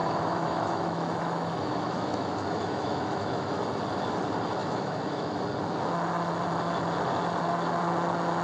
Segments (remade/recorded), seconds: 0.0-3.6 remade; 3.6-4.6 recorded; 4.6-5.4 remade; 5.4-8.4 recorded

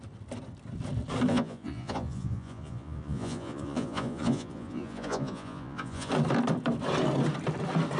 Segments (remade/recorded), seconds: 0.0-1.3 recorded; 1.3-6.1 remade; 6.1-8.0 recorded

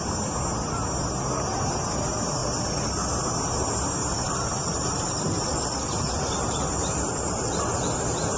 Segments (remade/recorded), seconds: 0.0-4.0 recorded; 4.0-7.7 remade; 7.7-8.4 recorded

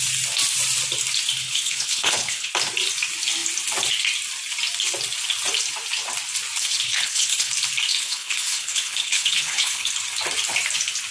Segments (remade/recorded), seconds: 0.0-1.4 recorded; 1.4-2.5 remade; 2.5-6.6 recorded; 6.6-7.5 remade; 7.5-7.9 recorded; 7.9-9.9 remade; 9.9-11.1 recorded